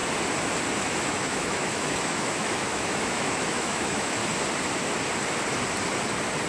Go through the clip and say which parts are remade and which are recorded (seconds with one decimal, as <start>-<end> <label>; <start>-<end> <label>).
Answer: 0.0-0.8 recorded; 0.8-4.2 remade; 4.2-6.5 recorded